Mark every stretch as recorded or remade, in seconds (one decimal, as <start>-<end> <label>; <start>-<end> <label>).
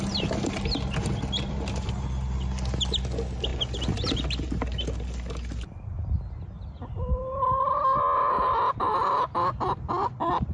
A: 0.0-10.5 recorded